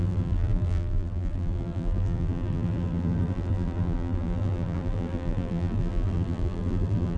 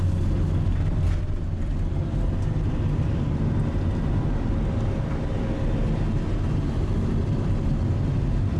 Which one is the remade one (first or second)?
first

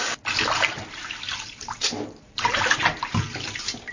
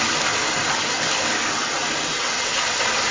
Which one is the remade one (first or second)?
first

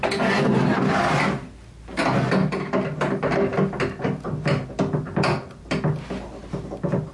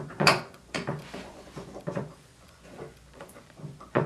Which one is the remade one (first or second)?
second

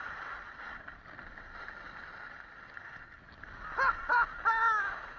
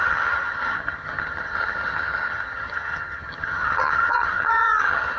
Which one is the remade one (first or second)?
second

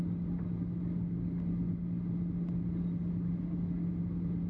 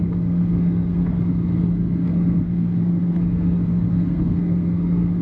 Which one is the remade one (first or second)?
second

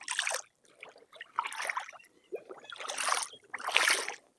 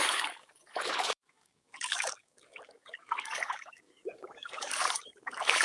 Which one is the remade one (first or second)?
second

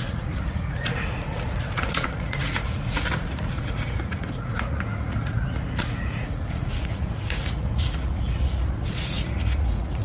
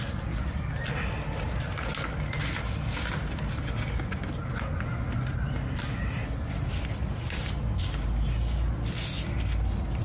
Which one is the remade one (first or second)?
first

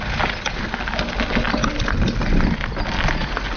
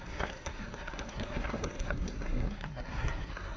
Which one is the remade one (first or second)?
second